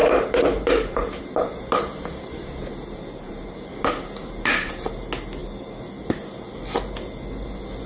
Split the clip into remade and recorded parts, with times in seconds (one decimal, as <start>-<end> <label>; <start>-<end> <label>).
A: 0.0-4.7 remade; 4.7-7.9 recorded